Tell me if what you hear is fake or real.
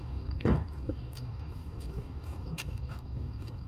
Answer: fake